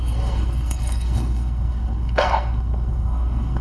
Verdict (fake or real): fake